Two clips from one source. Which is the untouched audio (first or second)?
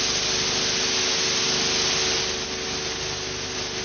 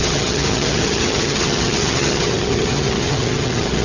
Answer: first